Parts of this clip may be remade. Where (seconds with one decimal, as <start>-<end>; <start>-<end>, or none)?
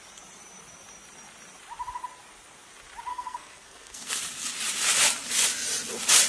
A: 3.1-4.2